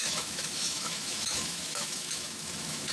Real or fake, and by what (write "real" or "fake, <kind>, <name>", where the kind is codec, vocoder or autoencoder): fake, autoencoder, DAC-VAE